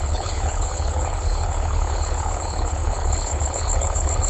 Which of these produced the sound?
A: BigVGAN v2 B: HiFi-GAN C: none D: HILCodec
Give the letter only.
D